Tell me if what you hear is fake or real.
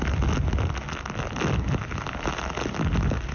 real